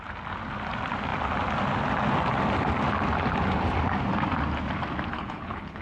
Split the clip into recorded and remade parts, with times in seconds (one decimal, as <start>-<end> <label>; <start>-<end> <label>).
0.0-5.1 recorded; 5.1-5.8 remade

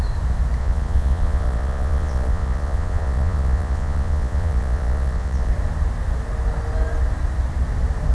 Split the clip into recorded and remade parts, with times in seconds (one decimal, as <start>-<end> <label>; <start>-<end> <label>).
0.0-0.6 recorded; 0.6-5.5 remade; 5.5-8.1 recorded

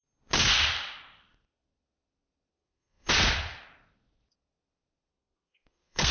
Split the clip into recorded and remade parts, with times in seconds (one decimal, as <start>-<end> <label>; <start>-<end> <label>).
0.0-2.5 recorded; 2.5-3.1 remade; 3.1-5.1 recorded; 5.1-6.1 remade

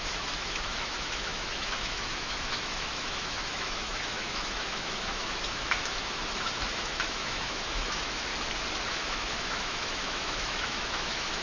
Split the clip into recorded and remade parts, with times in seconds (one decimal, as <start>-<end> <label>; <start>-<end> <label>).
0.0-8.3 remade; 8.3-8.9 recorded; 8.9-11.4 remade

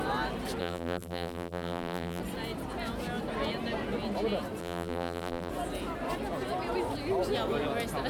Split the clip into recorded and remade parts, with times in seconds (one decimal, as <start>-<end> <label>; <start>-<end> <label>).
0.0-0.6 recorded; 0.6-2.2 remade; 2.2-4.6 recorded; 4.6-5.5 remade; 5.5-8.1 recorded

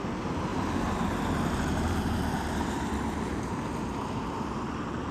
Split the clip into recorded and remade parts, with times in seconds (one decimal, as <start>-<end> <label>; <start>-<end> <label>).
0.0-0.5 recorded; 0.5-3.6 remade; 3.6-5.1 recorded